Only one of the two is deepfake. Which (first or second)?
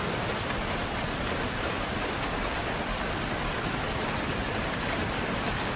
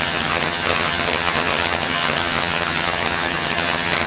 second